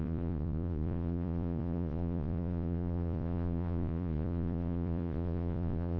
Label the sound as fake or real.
fake